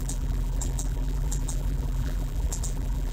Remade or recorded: remade